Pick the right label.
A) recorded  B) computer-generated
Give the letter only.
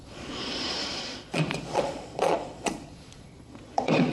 B